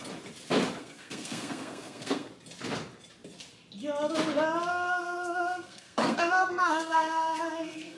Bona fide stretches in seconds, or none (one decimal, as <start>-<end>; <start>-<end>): 0.0-0.8; 2.3-4.7